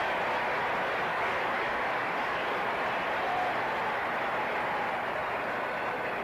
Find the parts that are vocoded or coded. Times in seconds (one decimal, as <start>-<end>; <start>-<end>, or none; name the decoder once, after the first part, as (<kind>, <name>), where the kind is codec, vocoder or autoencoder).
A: 1.1-2.7 (codec, DAC)